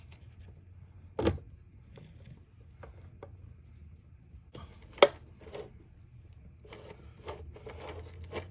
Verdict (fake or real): real